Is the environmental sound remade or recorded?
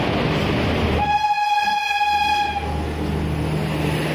recorded